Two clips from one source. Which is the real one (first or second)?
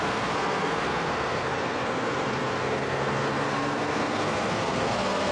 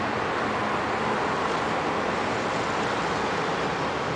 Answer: second